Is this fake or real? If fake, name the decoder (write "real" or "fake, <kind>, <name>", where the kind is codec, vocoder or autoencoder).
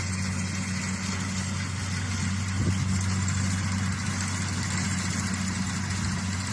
real